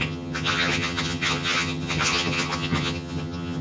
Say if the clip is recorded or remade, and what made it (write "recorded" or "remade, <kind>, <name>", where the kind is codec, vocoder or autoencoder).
remade, vocoder, HiFi-GAN